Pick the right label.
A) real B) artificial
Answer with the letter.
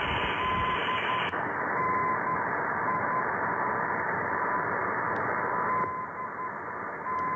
A